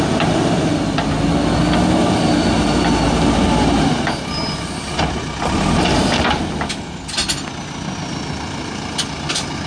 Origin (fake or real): real